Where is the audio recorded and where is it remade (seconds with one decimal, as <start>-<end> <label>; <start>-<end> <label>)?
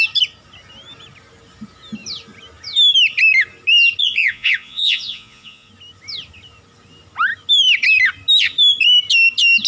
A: 0.0-4.0 recorded; 4.0-5.7 remade; 5.7-9.7 recorded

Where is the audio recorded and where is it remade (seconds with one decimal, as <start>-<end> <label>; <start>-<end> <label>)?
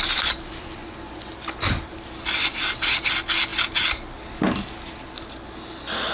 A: 0.0-0.8 recorded; 0.8-1.3 remade; 1.3-6.1 recorded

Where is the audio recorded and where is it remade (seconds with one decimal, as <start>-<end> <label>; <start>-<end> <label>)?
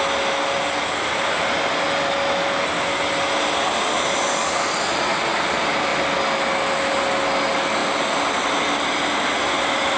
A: 0.0-10.0 recorded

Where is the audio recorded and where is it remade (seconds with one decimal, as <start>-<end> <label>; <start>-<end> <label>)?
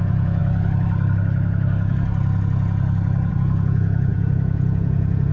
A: 0.0-0.4 remade; 0.4-3.3 recorded; 3.3-5.3 remade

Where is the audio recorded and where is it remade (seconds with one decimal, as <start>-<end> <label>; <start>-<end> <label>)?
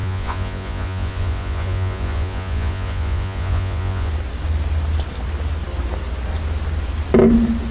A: 0.0-4.1 remade; 4.1-7.7 recorded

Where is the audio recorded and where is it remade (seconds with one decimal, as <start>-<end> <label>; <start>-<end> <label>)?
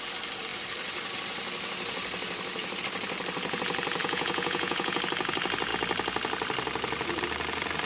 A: 0.0-4.0 recorded; 4.0-5.0 remade; 5.0-7.9 recorded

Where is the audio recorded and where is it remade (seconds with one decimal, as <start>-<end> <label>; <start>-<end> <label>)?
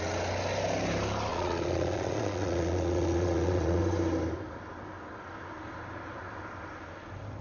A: 0.0-1.3 recorded; 1.3-3.8 remade; 3.8-7.4 recorded